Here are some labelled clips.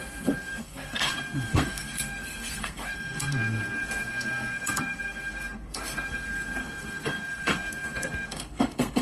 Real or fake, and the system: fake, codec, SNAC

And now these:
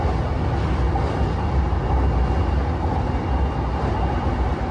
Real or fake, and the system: real